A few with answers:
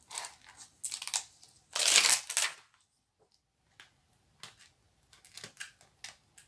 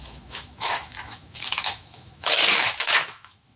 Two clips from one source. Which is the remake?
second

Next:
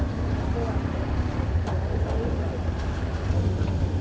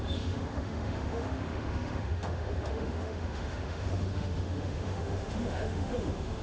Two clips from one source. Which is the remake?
second